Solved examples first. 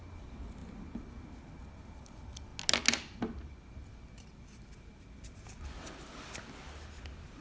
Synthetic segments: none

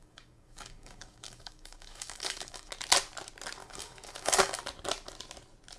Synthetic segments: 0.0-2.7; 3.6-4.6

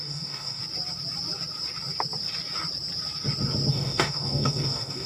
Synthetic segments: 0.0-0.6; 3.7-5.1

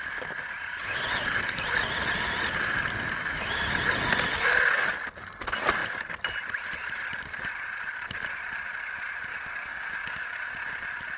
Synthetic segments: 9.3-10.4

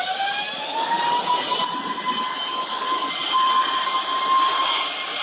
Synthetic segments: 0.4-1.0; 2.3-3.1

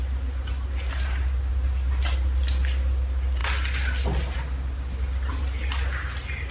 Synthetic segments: none

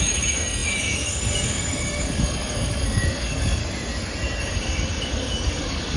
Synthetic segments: 0.0-3.6; 4.4-6.0